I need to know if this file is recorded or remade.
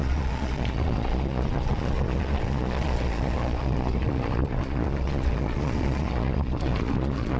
remade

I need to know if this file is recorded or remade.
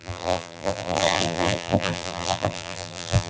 remade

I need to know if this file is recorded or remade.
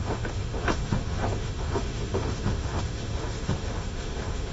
remade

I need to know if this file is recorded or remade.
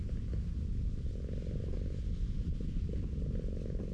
recorded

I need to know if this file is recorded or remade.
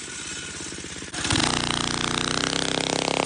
recorded